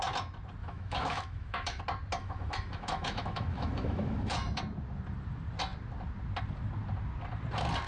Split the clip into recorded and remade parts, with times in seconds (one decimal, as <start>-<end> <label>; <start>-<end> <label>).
0.0-0.6 recorded; 0.6-1.8 remade; 1.8-2.2 recorded; 2.2-4.6 remade; 4.6-7.9 recorded